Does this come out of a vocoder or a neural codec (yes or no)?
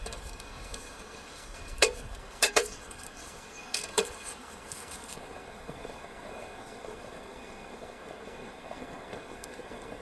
yes